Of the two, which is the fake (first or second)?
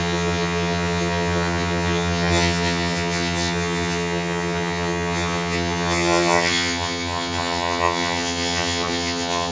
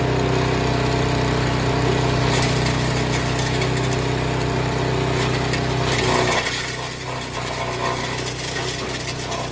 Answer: first